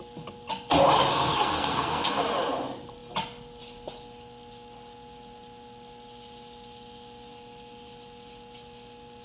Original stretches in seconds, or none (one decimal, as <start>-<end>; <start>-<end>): 0.0-1.1; 2.1-9.2